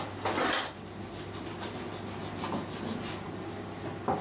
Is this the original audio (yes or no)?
yes